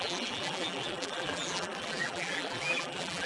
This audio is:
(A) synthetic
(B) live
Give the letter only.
A